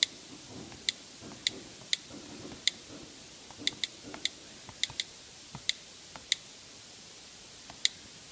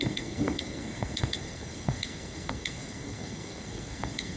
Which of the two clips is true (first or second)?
first